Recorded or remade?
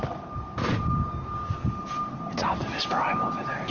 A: recorded